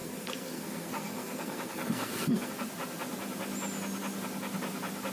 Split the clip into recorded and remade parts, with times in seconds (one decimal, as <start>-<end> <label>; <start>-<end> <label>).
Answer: 0.0-2.5 remade; 2.5-5.1 recorded

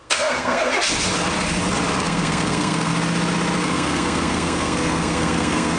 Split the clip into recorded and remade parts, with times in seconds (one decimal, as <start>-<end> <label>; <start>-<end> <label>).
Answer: 0.0-0.7 remade; 0.7-1.9 recorded; 1.9-2.9 remade; 2.9-3.6 recorded; 3.6-5.8 remade

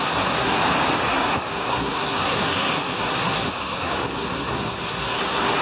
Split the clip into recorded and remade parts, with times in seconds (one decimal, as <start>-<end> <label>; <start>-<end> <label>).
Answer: 0.0-0.6 remade; 0.6-1.1 recorded; 1.1-5.6 remade

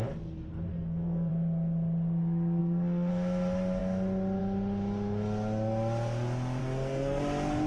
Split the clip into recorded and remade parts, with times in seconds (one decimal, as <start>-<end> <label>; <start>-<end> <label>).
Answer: 0.0-0.7 recorded; 0.7-1.3 remade; 1.3-2.6 recorded; 2.6-3.1 remade; 3.1-6.6 recorded; 6.6-7.2 remade; 7.2-7.7 recorded

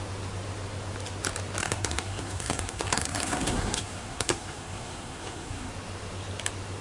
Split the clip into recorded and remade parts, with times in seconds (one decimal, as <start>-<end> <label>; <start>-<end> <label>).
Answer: 0.0-1.6 recorded; 1.6-5.7 remade; 5.7-6.8 recorded

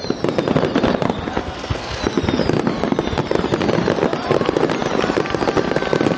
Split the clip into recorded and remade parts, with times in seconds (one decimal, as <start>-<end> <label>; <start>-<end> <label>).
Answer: 0.0-1.4 recorded; 1.4-2.0 remade; 2.0-6.2 recorded

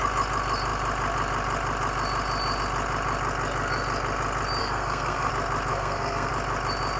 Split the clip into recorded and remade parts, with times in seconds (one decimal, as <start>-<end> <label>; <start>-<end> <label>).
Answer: 0.0-4.6 recorded; 4.6-5.3 remade; 5.3-5.7 recorded; 5.7-6.3 remade; 6.3-7.0 recorded